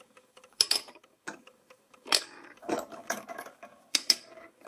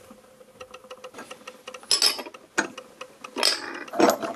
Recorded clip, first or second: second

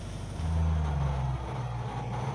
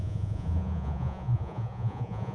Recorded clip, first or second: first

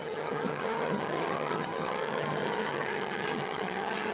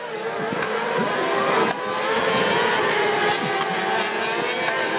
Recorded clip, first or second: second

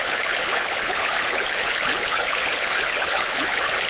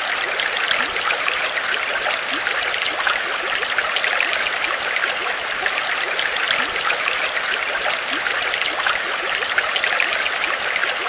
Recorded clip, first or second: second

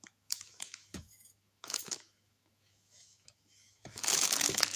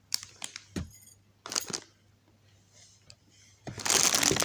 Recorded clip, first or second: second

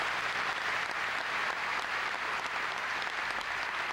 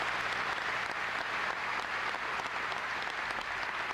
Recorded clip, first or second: second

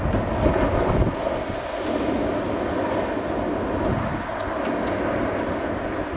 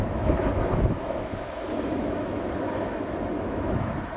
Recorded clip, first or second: first